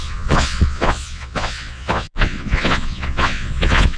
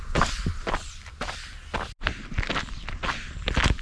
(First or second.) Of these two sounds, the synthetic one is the first